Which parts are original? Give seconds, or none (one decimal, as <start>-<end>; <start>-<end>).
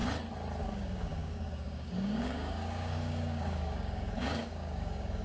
0.0-0.6